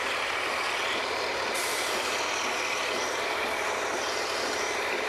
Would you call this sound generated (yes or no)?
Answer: yes